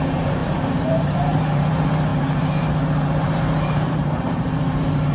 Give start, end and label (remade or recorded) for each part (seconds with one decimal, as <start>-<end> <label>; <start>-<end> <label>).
0.0-5.1 remade